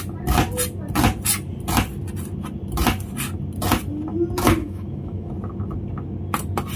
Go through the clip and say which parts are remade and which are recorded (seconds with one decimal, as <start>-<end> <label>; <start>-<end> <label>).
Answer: 0.0-4.6 recorded; 4.6-5.3 remade; 5.3-6.8 recorded

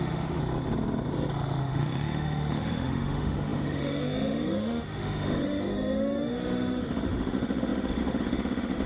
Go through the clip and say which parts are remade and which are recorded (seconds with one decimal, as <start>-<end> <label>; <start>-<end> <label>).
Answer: 0.0-0.4 remade; 0.4-1.6 recorded; 1.6-8.9 remade

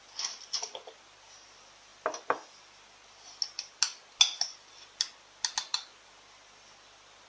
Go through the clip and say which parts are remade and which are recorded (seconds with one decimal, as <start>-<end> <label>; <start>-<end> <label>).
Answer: 0.0-7.3 recorded

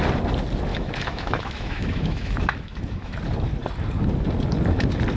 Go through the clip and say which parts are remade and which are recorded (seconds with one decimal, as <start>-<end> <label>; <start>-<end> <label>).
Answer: 0.0-0.7 recorded; 0.7-3.2 remade; 3.2-5.2 recorded

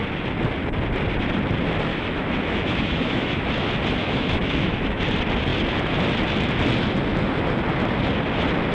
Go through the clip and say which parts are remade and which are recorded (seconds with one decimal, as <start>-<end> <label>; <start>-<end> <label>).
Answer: 0.0-1.9 recorded; 1.9-3.5 remade; 3.5-4.0 recorded; 4.0-5.0 remade; 5.0-8.7 recorded

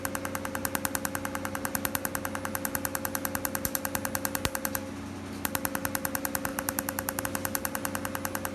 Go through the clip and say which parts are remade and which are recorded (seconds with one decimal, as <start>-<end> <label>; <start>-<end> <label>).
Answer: 0.0-8.5 recorded